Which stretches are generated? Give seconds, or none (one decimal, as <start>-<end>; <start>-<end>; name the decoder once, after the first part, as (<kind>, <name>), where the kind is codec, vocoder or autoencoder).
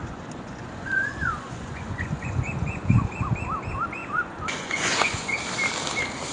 0.0-3.1 (vocoder, Vocos); 4.0-5.3